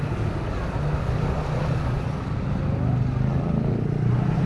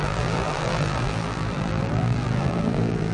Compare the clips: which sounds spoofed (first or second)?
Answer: second